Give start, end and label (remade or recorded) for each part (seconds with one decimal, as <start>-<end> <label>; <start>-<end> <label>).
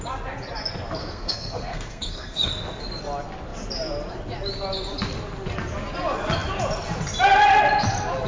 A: 0.0-1.0 recorded; 1.0-2.5 remade; 2.5-8.3 recorded